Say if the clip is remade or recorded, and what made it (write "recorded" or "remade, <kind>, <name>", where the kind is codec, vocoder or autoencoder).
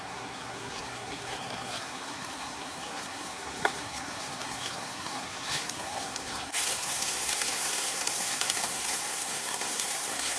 remade, codec, SNAC